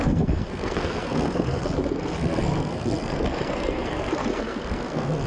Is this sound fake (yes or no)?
yes